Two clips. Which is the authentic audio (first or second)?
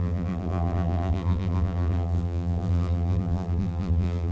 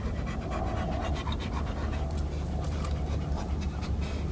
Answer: second